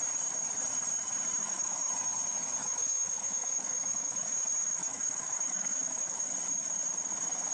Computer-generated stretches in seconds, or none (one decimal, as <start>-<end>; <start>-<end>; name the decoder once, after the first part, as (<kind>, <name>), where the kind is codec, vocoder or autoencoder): 1.4-1.9 (autoencoder, DAC-VAE); 2.6-6.3